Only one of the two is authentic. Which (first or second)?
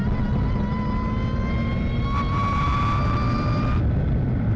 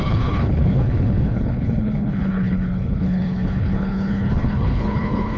first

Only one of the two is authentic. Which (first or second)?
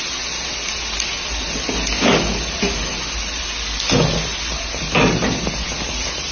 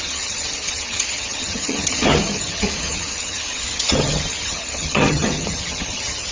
first